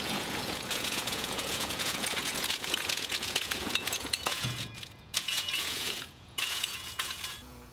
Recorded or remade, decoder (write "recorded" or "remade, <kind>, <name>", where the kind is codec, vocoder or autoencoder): remade, vocoder, Vocos